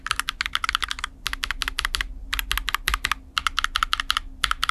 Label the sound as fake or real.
real